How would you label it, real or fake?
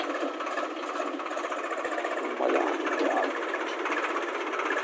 real